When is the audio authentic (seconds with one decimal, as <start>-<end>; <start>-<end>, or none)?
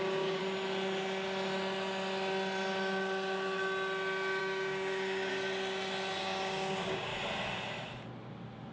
0.4-4.4; 5.3-6.2; 7.1-8.7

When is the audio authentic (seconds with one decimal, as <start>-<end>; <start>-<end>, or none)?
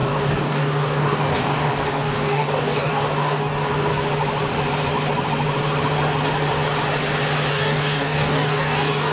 3.9-7.5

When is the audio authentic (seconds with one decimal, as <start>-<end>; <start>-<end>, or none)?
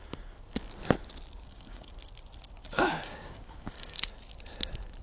0.0-1.4; 1.9-2.6; 4.0-5.0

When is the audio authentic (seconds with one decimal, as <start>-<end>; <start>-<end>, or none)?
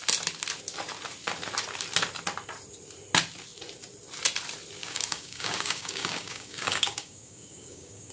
0.0-4.8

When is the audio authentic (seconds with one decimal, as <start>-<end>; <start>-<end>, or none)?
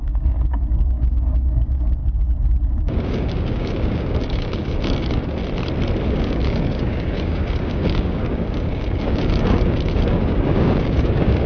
2.0-2.8; 5.4-6.0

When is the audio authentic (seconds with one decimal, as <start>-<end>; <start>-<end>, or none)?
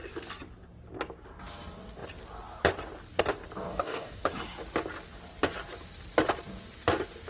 0.0-3.7; 4.2-7.3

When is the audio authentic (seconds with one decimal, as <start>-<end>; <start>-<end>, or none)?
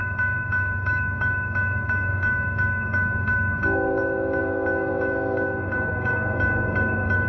none